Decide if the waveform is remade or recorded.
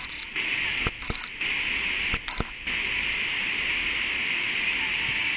recorded